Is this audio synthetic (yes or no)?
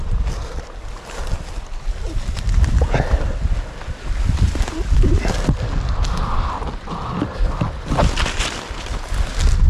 no